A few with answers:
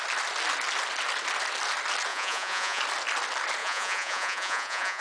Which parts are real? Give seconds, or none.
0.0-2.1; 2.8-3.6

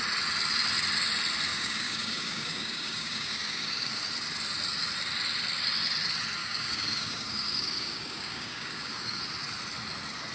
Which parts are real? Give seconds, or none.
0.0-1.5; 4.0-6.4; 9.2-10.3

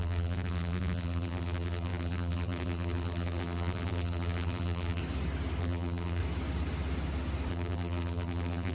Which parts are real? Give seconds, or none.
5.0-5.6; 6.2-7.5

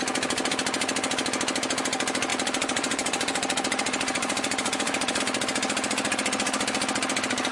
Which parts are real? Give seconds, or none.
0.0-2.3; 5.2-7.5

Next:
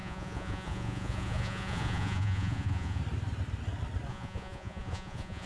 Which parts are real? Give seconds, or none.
3.0-4.1